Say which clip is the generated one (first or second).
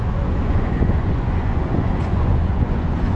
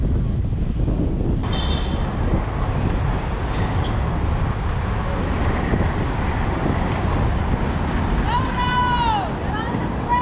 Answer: first